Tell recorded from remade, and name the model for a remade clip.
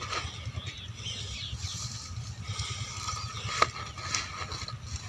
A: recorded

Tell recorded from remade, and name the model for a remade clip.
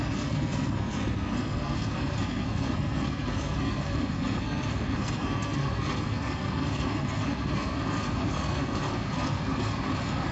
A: remade, codec, SNAC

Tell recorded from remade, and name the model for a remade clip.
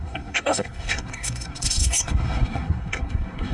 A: remade, codec, SNAC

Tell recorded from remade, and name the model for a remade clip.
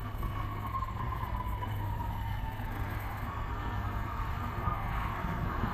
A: remade, codec, SNAC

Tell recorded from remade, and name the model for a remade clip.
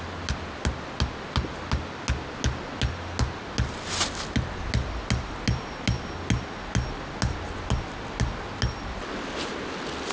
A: recorded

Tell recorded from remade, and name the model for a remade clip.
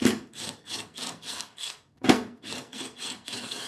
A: remade, codec, SNAC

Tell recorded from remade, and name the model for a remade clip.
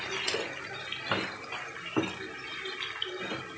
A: recorded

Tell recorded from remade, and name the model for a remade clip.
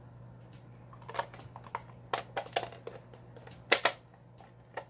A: recorded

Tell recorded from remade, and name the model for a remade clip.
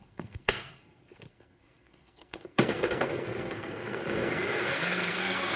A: remade, codec, SNAC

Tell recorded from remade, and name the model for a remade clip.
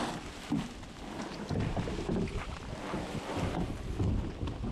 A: recorded